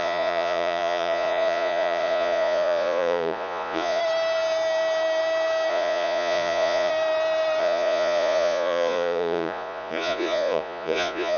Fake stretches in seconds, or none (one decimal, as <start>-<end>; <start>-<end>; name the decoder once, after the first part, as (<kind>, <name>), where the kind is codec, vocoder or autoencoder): 0.0-4.0 (vocoder, Vocos); 5.7-6.9; 7.6-11.4